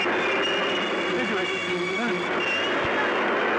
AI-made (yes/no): no